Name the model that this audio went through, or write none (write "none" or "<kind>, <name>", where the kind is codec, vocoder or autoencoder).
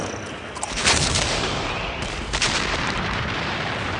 vocoder, BigVGAN v2